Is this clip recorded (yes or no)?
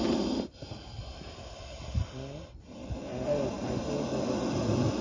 yes